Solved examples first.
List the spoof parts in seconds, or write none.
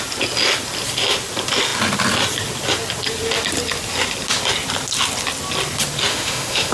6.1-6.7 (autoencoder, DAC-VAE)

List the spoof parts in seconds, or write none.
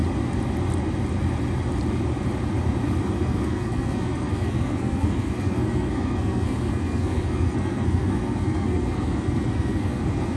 3.2-10.4 (codec, SNAC)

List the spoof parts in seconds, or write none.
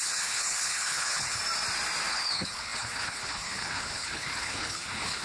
0.0-1.4 (codec, HILCodec); 2.1-5.2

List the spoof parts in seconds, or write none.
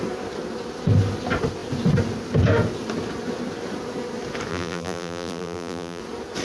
4.5-6.0 (vocoder, BigVGAN v2)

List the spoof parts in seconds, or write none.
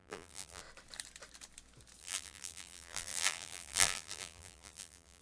0.0-0.6 (vocoder, BigVGAN v2); 2.0-5.2